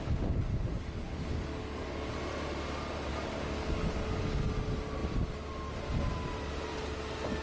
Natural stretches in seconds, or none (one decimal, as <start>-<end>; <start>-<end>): 0.0-0.5; 2.2-3.1; 4.5-7.4